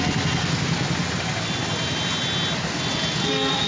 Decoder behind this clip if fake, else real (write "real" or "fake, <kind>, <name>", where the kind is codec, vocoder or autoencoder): real